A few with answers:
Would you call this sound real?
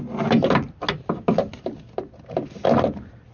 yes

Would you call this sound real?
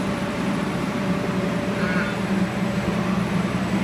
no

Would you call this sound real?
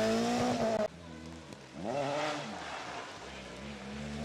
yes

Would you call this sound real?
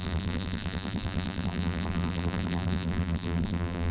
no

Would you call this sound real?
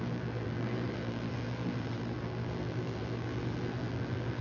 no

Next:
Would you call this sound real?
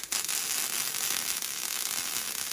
yes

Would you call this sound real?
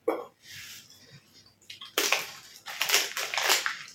no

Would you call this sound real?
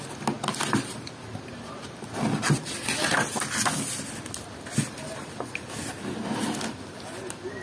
yes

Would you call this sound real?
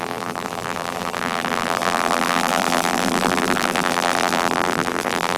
no